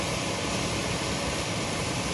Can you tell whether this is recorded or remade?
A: remade